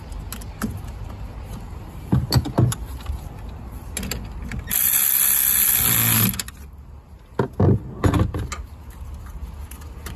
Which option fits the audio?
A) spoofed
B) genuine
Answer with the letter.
B